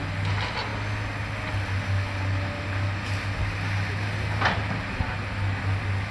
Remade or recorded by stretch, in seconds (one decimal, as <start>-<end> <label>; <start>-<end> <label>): 0.0-6.1 recorded